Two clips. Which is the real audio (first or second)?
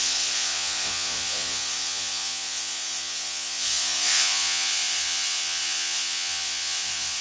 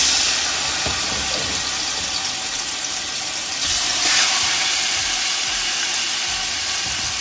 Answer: second